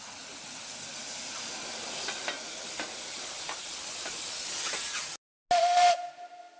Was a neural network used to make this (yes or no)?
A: no